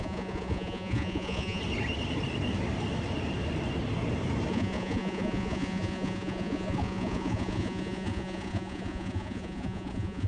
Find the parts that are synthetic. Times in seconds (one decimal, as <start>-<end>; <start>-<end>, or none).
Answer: 0.0-1.6; 4.5-10.3